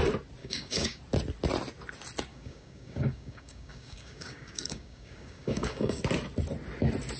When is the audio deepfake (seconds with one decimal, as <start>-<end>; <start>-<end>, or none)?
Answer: 0.4-1.0; 2.3-6.0